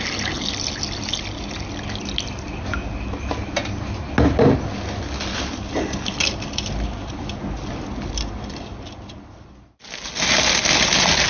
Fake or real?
real